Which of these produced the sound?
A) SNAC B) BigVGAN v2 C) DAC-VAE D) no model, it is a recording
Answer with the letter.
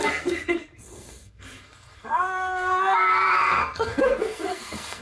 A